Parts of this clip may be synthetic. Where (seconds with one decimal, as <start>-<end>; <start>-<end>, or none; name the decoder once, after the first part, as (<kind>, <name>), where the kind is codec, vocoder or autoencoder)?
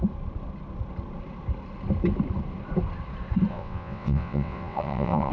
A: 3.5-5.3 (vocoder, WaveNeXt)